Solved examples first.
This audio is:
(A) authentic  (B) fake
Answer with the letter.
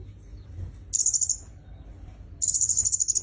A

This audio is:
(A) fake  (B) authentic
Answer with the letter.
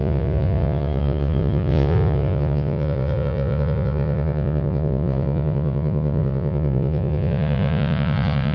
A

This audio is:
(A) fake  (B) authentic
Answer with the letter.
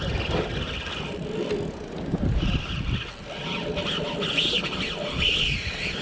B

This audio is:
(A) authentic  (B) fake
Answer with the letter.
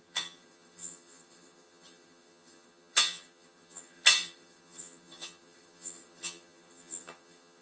B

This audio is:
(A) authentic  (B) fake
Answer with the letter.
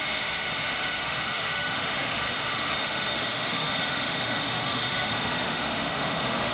B